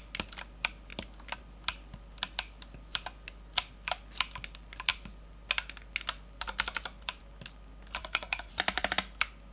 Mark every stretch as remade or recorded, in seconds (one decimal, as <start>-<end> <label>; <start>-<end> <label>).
0.0-8.0 recorded; 8.0-8.5 remade; 8.5-9.5 recorded